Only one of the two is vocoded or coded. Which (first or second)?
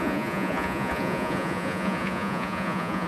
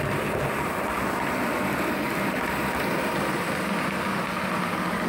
first